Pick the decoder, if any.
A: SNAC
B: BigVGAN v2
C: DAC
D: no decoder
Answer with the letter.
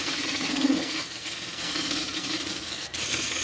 A